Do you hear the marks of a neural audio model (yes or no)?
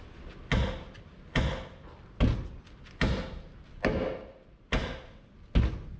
no